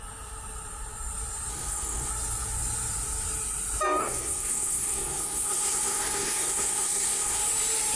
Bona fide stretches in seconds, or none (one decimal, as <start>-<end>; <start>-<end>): 0.0-1.5; 2.1-4.0; 7.4-8.0